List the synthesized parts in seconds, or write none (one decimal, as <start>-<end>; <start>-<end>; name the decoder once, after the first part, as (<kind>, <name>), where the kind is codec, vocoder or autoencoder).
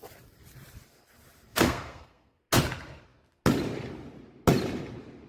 1.5-2.4 (codec, SNAC)